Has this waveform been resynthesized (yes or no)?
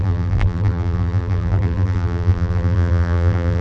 yes